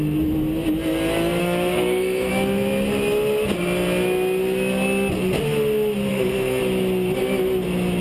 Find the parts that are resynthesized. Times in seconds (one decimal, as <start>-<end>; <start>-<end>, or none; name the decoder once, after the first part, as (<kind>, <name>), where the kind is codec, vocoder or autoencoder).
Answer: 1.4-2.3 (codec, SNAC); 6.1-6.6